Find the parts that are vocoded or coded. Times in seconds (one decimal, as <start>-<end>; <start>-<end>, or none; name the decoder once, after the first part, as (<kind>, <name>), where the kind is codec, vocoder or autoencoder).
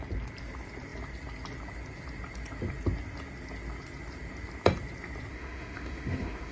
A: 5.3-6.5 (autoencoder, DAC-VAE)